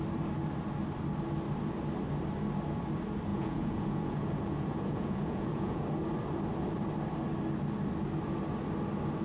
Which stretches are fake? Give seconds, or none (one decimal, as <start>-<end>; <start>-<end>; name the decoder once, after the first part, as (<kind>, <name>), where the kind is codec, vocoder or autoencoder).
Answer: 3.3-5.8 (vocoder, Vocos)